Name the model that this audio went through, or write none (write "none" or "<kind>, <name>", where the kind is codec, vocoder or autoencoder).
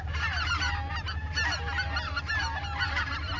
none